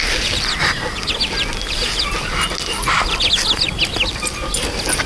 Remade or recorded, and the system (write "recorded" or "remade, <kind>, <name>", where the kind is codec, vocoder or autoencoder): recorded